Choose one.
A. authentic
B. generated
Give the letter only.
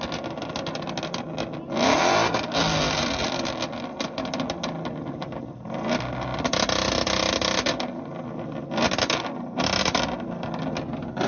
A